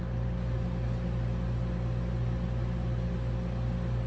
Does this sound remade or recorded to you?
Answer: recorded